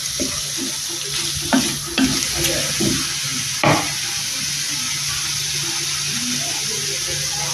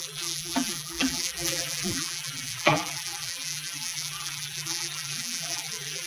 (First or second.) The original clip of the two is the first